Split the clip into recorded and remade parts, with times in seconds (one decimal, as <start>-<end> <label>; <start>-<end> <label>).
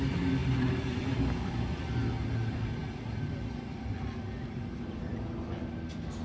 0.0-0.4 recorded; 0.4-1.2 remade; 1.2-2.8 recorded; 2.8-5.2 remade; 5.2-6.2 recorded